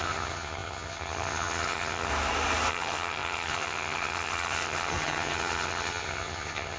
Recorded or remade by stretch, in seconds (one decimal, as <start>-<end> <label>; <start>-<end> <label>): 0.0-2.1 remade; 2.1-2.7 recorded; 2.7-6.8 remade